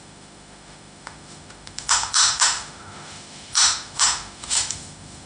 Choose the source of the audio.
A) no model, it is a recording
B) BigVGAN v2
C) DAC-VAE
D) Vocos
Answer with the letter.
C